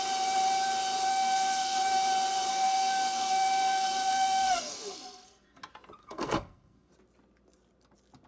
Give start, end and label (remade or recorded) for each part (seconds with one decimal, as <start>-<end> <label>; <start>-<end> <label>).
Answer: 0.0-1.1 recorded; 1.1-1.8 remade; 1.8-2.5 recorded; 2.5-5.6 remade; 5.6-6.0 recorded; 6.0-6.9 remade; 6.9-8.3 recorded